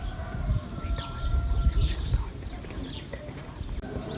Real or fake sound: fake